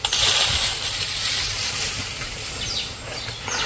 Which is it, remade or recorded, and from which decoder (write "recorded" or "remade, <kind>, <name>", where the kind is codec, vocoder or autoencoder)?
recorded